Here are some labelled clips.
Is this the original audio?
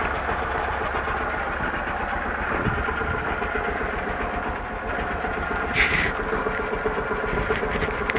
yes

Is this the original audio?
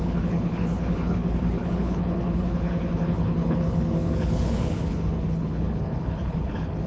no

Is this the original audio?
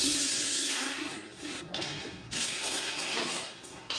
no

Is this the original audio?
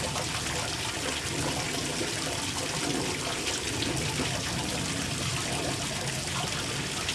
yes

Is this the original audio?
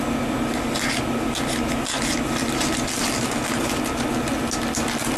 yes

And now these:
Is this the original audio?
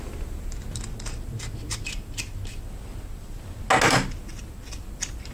yes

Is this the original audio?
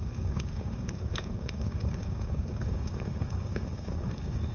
no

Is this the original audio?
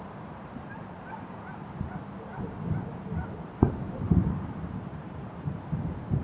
no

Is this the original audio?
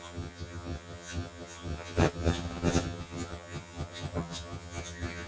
no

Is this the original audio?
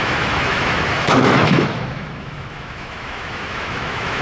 no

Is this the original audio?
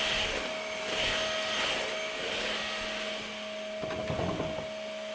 yes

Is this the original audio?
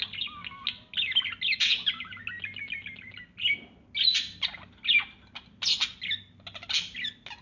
yes